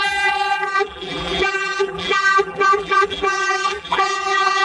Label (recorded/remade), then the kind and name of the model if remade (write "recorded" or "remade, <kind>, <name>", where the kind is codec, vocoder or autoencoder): remade, vocoder, BigVGAN v2